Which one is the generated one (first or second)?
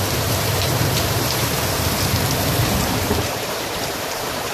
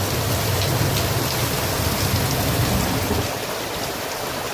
first